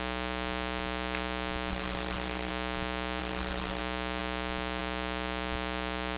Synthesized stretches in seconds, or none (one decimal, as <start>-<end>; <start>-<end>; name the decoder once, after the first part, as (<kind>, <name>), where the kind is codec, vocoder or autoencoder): 1.7-2.5 (autoencoder, DAC-VAE); 3.2-3.8